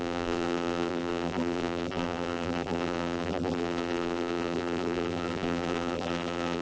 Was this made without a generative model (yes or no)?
no